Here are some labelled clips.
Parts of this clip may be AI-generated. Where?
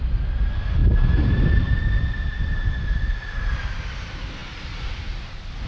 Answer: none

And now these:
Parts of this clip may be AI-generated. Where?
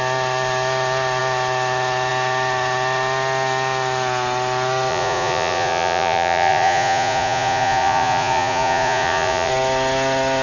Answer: 4.9-9.5 (vocoder, Vocos)